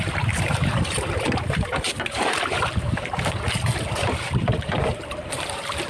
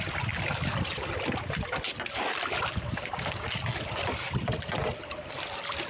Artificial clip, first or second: first